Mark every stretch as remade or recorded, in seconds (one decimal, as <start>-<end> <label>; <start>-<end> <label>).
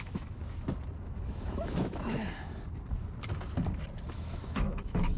0.0-0.4 remade; 0.4-1.0 recorded; 1.0-2.2 remade; 2.2-4.1 recorded; 4.1-5.2 remade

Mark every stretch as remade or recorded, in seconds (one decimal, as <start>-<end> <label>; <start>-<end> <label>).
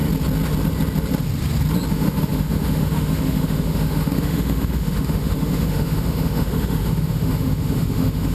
0.0-1.9 recorded; 1.9-8.3 remade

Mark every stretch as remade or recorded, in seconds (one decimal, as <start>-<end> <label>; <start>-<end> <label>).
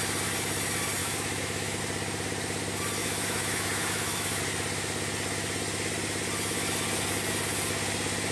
0.0-1.0 recorded; 1.0-1.8 remade; 1.8-3.0 recorded; 3.0-4.4 remade; 4.4-8.3 recorded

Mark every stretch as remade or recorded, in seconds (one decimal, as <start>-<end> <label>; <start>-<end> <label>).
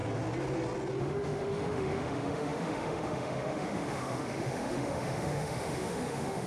0.0-1.0 recorded; 1.0-6.5 remade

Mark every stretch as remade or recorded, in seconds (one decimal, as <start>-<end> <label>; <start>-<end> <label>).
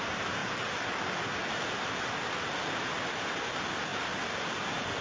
0.0-5.0 recorded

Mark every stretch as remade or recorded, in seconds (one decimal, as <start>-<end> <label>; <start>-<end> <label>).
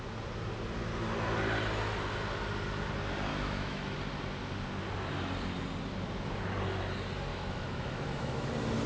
0.0-3.3 recorded; 3.3-4.0 remade; 4.0-7.3 recorded; 7.3-8.5 remade; 8.5-8.9 recorded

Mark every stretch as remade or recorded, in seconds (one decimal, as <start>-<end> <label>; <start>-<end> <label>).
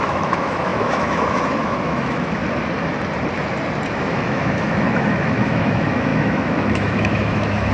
0.0-2.4 remade; 2.4-3.9 recorded; 3.9-7.7 remade